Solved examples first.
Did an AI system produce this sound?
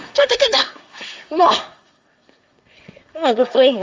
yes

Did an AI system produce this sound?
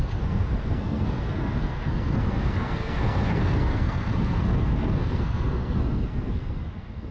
yes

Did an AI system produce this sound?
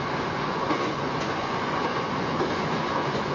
yes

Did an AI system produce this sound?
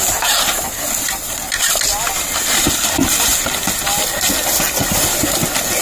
no